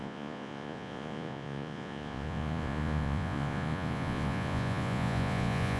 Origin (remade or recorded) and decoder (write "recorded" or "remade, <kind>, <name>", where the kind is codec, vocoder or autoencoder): remade, vocoder, Vocos